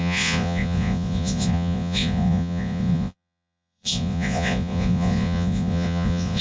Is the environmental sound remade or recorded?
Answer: remade